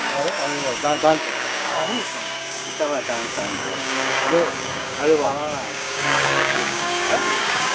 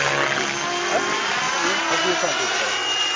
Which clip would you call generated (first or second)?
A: first